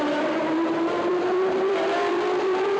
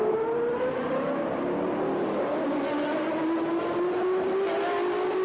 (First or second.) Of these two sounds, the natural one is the second